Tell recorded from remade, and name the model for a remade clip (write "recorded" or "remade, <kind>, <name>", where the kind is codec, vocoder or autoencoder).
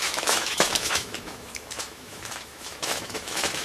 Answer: remade, autoencoder, DAC-VAE